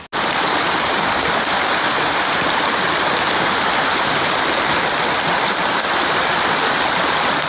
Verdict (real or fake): real